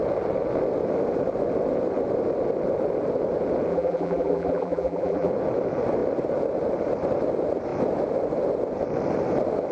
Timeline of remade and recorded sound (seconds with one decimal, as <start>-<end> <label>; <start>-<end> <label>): 0.0-3.7 recorded; 3.7-5.3 remade; 5.3-9.7 recorded